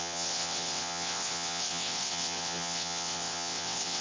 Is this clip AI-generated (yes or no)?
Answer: yes